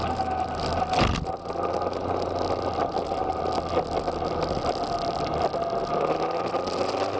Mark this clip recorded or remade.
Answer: recorded